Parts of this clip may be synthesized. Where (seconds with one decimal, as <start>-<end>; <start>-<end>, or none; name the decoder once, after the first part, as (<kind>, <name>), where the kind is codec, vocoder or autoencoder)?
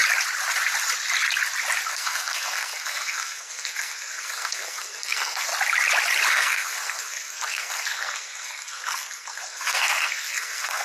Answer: 1.9-5.5 (codec, SNAC); 6.3-10.8